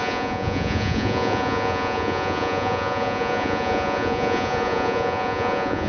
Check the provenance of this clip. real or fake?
fake